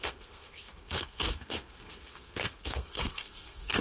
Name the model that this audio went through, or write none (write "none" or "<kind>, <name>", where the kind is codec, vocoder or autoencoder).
codec, SNAC